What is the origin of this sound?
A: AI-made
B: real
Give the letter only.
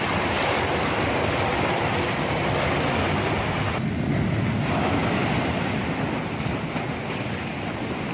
B